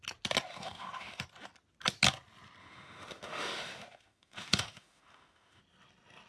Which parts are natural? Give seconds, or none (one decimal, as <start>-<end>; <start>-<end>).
0.0-0.5; 1.2-2.6; 5.6-6.3